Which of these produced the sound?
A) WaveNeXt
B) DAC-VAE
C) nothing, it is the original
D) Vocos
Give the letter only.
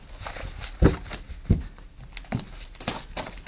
C